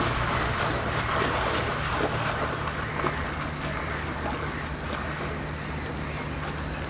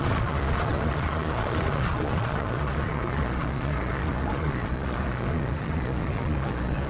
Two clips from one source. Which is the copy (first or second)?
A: second